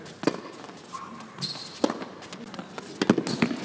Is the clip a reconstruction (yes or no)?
no